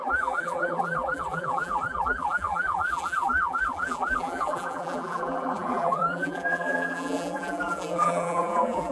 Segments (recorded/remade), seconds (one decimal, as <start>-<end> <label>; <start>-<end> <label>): 0.0-8.9 remade